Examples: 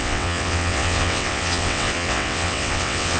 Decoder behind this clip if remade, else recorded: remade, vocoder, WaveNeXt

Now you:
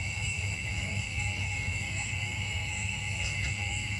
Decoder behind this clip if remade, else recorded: remade, codec, SNAC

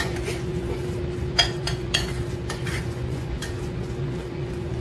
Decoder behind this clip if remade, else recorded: remade, vocoder, Vocos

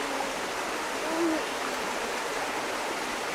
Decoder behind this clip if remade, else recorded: recorded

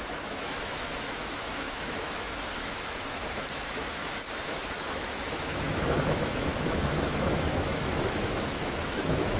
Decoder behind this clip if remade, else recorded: remade, autoencoder, DAC-VAE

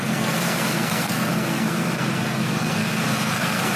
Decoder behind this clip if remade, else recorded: remade, codec, SNAC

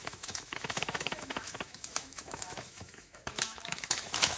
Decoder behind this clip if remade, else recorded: remade, autoencoder, DAC-VAE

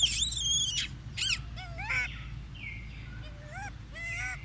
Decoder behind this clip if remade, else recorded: recorded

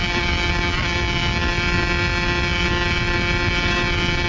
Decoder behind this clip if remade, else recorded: recorded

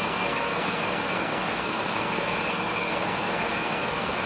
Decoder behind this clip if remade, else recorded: remade, codec, SNAC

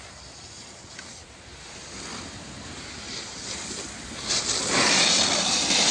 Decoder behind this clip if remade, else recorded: recorded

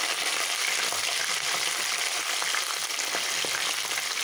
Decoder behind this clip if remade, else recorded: recorded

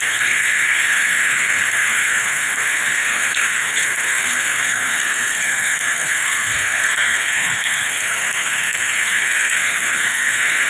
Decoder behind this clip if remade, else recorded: remade, codec, SNAC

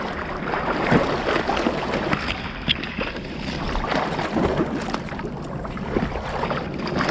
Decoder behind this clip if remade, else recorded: recorded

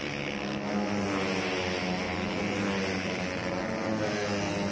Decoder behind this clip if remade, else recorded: recorded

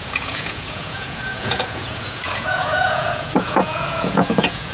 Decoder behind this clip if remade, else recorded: remade, vocoder, Vocos